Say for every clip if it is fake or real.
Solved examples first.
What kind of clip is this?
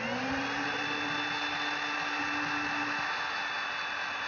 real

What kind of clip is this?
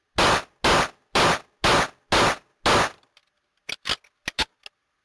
real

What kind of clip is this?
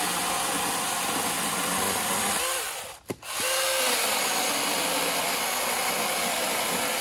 real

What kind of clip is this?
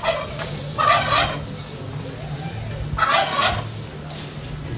real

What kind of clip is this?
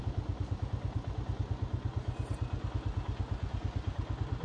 real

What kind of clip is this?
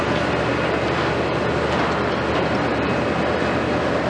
real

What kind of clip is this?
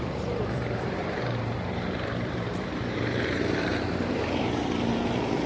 fake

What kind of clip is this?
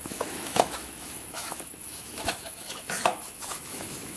fake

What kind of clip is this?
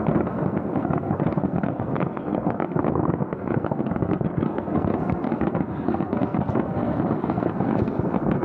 fake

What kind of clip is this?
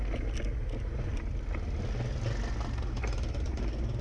real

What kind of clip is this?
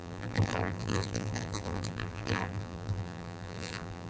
fake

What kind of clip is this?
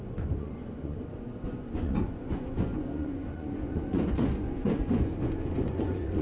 fake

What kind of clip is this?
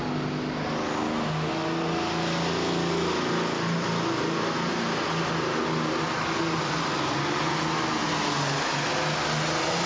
real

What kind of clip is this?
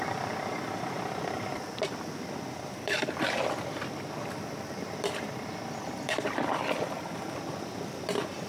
fake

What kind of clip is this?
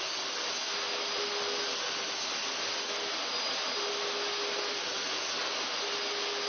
real